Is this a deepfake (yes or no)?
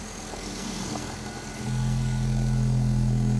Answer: yes